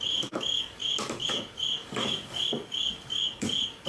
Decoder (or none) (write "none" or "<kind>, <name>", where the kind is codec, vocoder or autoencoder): codec, DAC